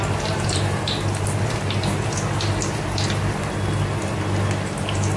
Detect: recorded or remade recorded